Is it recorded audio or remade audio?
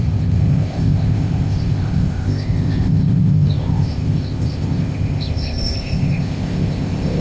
remade